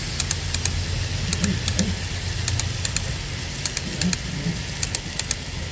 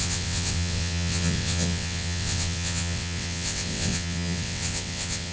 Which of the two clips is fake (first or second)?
second